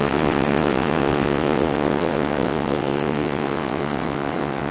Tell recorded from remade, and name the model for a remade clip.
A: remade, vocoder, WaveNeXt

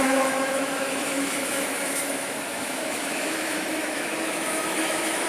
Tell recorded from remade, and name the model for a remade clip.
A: remade, autoencoder, DAC-VAE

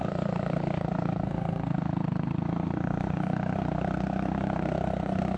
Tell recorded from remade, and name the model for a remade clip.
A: remade, codec, SNAC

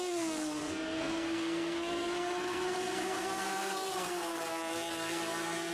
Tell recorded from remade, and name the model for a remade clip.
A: remade, codec, SNAC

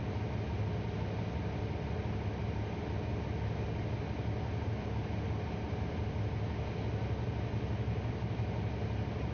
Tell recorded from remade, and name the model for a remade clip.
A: recorded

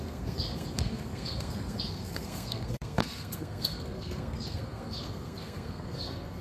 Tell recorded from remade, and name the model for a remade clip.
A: remade, codec, SNAC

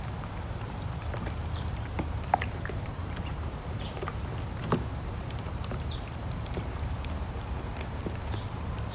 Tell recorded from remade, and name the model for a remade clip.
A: remade, vocoder, BigVGAN v2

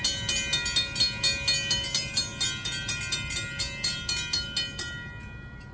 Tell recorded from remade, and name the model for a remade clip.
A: recorded